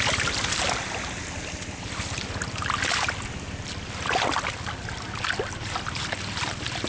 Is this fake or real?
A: real